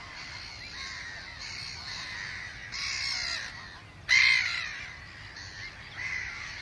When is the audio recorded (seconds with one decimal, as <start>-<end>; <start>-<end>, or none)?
0.0-6.6